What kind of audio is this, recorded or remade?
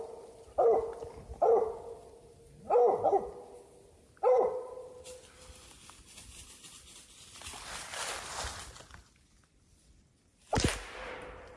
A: recorded